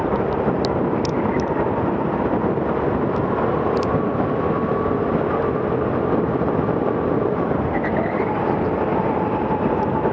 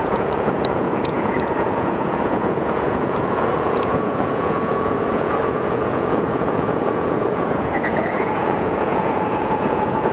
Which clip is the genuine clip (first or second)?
first